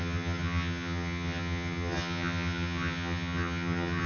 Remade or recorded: remade